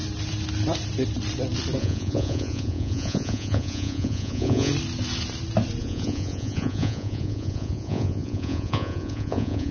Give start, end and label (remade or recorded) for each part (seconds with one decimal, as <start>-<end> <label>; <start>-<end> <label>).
0.0-1.8 recorded; 1.8-4.7 remade; 4.7-5.8 recorded; 5.8-9.7 remade